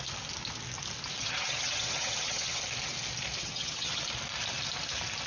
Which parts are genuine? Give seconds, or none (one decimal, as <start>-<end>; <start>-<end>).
0.0-1.2; 2.6-3.4; 4.0-5.3